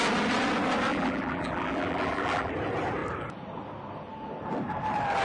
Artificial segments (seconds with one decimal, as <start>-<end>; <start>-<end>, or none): 0.9-2.5